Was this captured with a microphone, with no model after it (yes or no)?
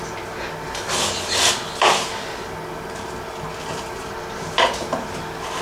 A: yes